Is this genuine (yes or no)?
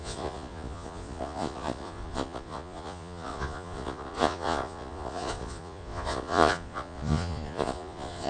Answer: no